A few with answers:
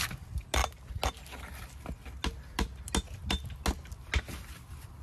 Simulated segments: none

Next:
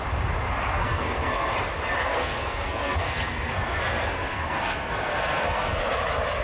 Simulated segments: 0.7-1.5 (codec, SNAC); 2.0-5.8

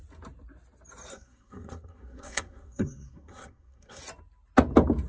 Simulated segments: 1.1-4.0 (codec, SNAC)